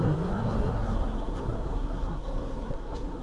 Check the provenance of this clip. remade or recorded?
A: remade